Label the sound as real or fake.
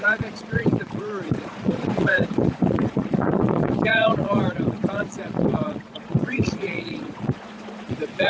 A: fake